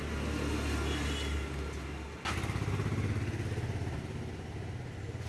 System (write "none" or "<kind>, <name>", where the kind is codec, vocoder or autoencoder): none